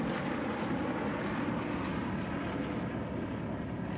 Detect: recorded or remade recorded